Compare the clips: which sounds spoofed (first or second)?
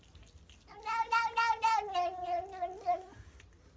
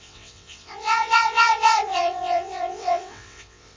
second